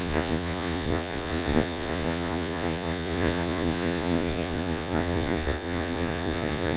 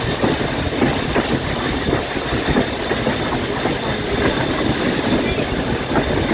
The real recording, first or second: second